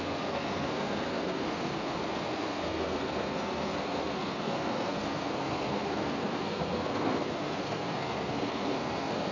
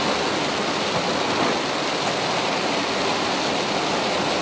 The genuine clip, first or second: second